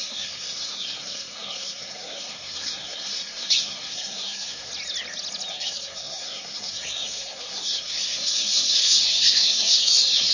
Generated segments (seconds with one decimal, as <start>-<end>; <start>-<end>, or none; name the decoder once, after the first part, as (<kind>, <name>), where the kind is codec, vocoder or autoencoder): 0.0-4.7 (codec, SNAC); 5.5-10.3

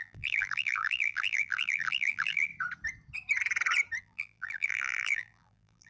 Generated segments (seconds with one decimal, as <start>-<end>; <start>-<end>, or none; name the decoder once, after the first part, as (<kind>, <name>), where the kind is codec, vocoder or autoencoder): 0.0-2.5 (vocoder, BigVGAN v2); 4.0-5.9

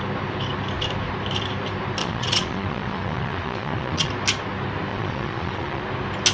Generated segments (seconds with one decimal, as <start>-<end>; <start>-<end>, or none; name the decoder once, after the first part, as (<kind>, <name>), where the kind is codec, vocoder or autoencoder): 2.0-4.1 (vocoder, Vocos); 4.9-5.8

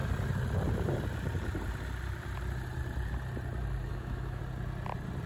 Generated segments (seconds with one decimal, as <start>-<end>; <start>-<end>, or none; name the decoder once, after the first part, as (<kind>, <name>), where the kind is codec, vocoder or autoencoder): 3.9-4.4 (autoencoder, DAC-VAE)

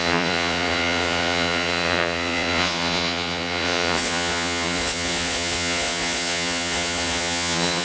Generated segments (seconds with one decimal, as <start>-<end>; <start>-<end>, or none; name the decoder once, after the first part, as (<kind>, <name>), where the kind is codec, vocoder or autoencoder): 0.0-7.8 (vocoder, Vocos)